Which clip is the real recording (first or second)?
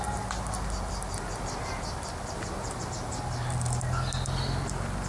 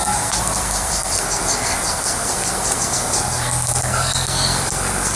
first